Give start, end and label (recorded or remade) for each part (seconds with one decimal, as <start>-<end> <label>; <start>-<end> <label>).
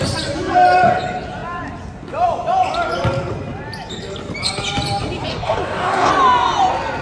0.0-5.3 recorded; 5.3-6.1 remade; 6.1-7.0 recorded